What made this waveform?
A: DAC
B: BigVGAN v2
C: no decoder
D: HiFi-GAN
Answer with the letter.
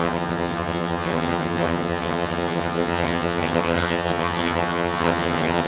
D